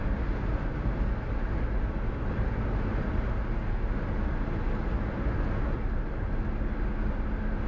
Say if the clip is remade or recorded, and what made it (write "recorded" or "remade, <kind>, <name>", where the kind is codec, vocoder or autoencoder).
recorded